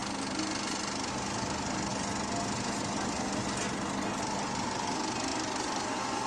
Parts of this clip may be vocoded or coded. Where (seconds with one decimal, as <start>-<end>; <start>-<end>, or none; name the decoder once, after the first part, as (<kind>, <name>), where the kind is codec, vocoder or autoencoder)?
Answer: 5.3-6.3 (vocoder, BigVGAN v2)